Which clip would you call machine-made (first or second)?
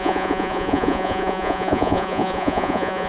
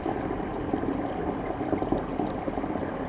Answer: first